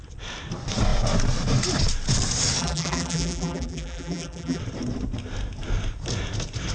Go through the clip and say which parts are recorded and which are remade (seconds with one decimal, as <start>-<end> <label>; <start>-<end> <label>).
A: 0.0-2.6 recorded; 2.6-4.6 remade; 4.6-6.7 recorded